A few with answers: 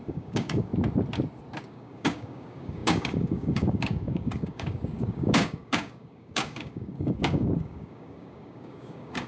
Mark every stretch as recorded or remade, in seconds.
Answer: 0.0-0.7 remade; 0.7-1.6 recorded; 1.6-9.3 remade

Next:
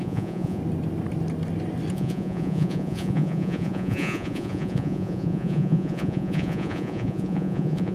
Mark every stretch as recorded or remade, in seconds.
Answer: 0.0-0.6 remade; 0.6-1.9 recorded; 1.9-7.9 remade

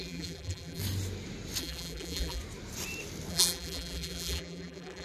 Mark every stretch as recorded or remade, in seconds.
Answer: 0.0-0.8 remade; 0.8-1.6 recorded; 1.6-2.4 remade; 2.4-3.3 recorded; 3.3-5.0 remade

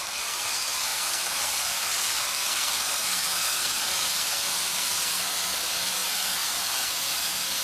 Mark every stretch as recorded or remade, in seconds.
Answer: 0.0-7.6 remade

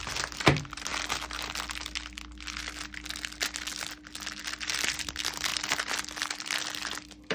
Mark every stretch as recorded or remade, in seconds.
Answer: 0.0-0.9 remade; 0.9-4.4 recorded; 4.4-7.3 remade